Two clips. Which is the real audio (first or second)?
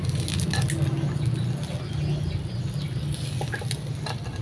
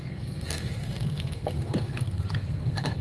first